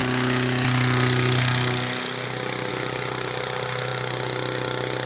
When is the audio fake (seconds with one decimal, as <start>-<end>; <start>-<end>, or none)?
none